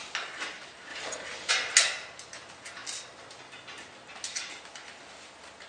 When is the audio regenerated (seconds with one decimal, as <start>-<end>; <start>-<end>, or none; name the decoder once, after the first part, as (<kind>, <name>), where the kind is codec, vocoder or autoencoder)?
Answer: 0.9-1.5 (vocoder, BigVGAN v2)